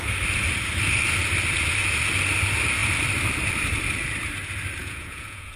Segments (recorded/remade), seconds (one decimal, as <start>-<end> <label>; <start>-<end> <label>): 0.0-4.8 recorded; 4.8-5.6 remade